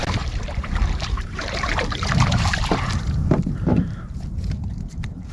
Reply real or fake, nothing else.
fake